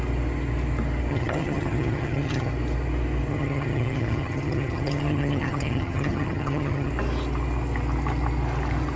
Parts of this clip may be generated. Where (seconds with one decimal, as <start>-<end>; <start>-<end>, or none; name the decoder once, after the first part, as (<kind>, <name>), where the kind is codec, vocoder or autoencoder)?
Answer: 1.1-2.5 (vocoder, HiFi-GAN); 3.3-6.9